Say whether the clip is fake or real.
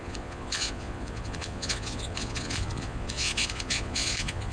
fake